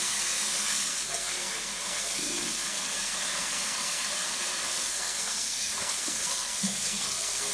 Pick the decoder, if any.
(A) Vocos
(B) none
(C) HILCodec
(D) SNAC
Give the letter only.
D